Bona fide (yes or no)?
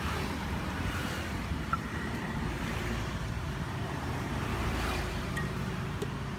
no